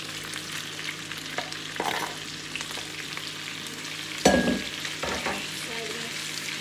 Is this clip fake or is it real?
real